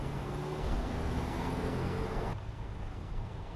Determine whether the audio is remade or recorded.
remade